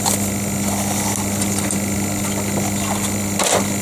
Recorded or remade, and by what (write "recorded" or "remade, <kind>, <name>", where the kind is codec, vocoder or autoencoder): recorded